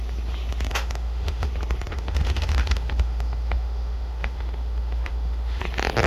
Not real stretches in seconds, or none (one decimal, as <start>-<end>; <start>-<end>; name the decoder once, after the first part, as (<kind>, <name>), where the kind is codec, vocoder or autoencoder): 0.7-1.5 (autoencoder, DAC-VAE); 1.9-5.6